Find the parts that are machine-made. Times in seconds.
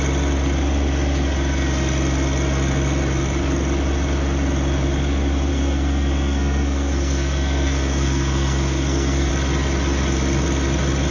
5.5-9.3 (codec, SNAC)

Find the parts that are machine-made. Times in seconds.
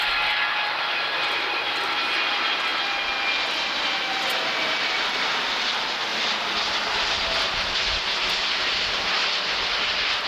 none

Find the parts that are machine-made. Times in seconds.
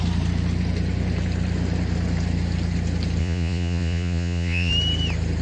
3.2-4.7 (vocoder, Vocos)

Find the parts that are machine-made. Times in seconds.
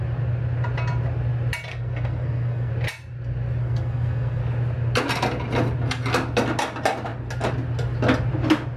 1.7-2.7 (codec, SNAC); 3.6-4.4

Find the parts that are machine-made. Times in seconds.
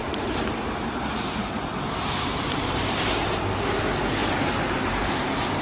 0.0-3.4 (vocoder, BigVGAN v2); 4.2-5.6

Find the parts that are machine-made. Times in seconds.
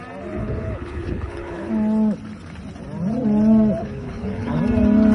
0.4-1.7 (codec, HILCodec); 3.8-4.6